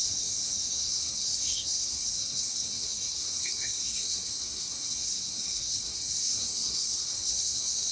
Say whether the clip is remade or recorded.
remade